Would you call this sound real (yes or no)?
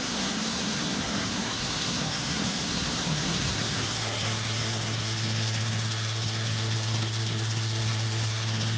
no